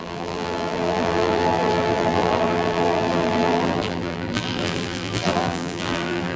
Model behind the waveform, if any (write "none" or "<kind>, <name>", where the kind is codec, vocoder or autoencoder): vocoder, BigVGAN v2